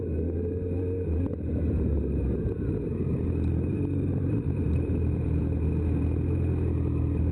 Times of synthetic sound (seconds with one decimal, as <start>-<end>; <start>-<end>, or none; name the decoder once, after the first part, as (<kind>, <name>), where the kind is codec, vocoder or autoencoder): 1.5-5.4 (vocoder, BigVGAN v2)